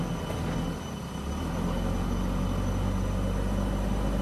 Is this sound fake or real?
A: real